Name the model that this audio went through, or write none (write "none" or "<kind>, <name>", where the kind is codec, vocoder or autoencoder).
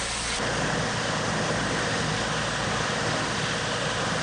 none